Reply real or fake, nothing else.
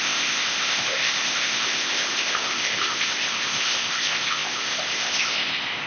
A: fake